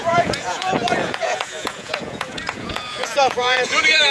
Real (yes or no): no